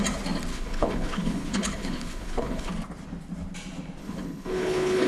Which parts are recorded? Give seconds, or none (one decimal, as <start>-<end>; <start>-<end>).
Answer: 0.0-0.5; 2.7-4.0

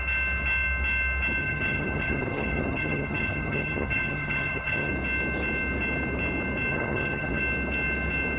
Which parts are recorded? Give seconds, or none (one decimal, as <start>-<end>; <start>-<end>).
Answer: 0.0-1.4; 4.9-6.7; 7.4-8.4

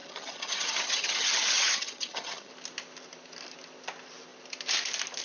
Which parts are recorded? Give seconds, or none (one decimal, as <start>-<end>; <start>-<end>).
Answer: 2.5-5.2